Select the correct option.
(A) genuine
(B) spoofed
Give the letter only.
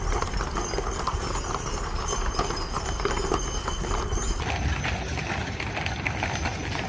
A